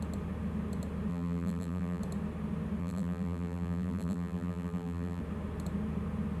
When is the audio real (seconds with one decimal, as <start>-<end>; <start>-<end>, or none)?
0.0-1.1; 2.0-2.8; 5.2-6.4